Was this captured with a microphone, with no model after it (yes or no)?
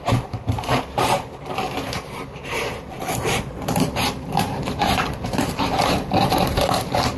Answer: no